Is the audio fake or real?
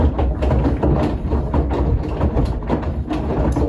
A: real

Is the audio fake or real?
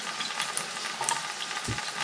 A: real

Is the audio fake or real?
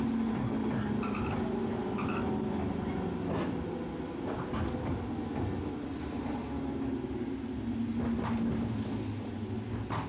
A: real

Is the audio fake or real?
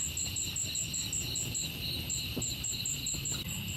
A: real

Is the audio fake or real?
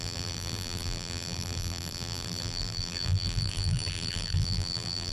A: fake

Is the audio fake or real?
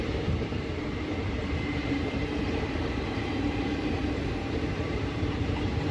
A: fake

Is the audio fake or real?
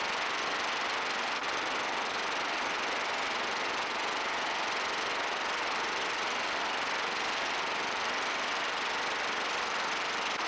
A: real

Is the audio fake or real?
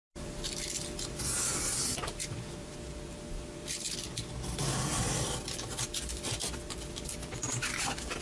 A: fake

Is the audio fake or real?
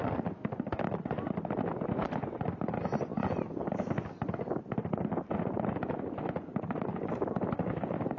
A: real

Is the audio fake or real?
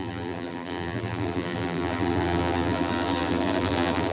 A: fake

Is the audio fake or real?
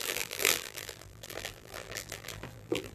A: fake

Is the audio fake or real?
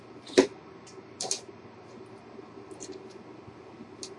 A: real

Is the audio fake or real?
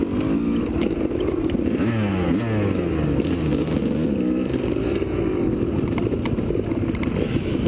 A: real